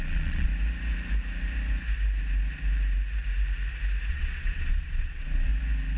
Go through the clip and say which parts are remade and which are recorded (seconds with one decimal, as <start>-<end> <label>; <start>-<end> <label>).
0.0-0.5 remade; 0.5-4.1 recorded; 4.1-5.5 remade; 5.5-6.0 recorded